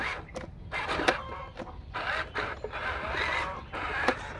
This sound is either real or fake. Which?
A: real